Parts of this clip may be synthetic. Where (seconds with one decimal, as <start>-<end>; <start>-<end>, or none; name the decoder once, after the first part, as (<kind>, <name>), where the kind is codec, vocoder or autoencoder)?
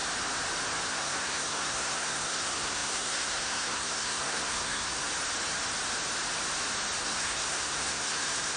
0.9-5.1 (codec, SNAC); 7.0-8.6